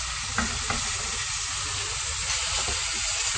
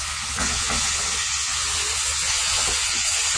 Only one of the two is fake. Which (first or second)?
second